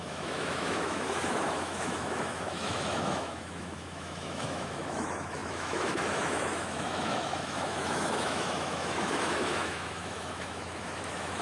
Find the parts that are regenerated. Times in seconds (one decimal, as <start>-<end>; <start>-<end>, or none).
0.0-11.4